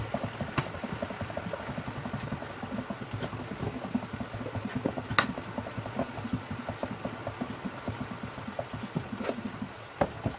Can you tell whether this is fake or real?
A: real